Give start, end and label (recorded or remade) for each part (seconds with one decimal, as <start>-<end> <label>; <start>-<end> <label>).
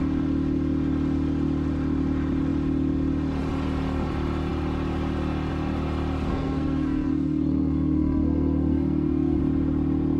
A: 0.0-6.3 recorded; 6.3-9.4 remade; 9.4-10.2 recorded